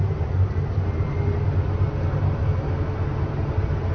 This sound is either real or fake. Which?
real